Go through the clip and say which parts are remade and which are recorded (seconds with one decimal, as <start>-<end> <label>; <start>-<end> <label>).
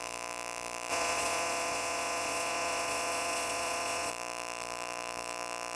0.0-0.9 recorded; 0.9-4.1 remade; 4.1-5.8 recorded